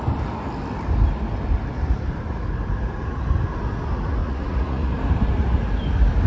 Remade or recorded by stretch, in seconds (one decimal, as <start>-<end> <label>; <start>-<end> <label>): 0.0-4.2 recorded; 4.2-5.0 remade; 5.0-6.3 recorded